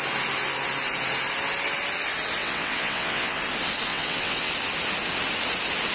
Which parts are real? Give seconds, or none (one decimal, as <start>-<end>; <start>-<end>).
0.0-2.4; 3.4-3.9; 4.5-5.9